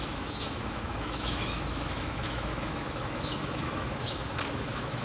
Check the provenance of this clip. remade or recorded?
remade